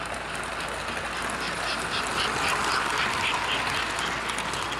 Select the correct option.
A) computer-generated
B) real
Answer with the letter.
B